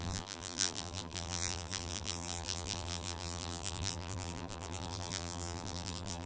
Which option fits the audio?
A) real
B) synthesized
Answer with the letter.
B